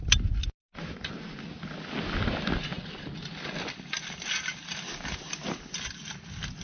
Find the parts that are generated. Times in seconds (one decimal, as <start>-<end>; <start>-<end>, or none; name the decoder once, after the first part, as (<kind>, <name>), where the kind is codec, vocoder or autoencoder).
0.6-1.1 (vocoder, BigVGAN v2)